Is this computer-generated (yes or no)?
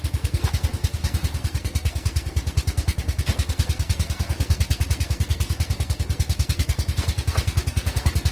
yes